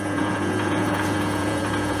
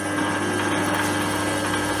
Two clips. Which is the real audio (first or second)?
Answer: second